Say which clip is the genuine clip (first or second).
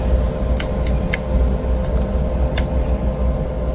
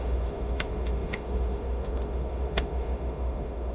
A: first